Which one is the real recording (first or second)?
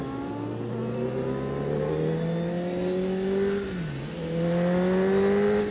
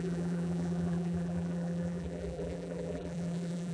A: first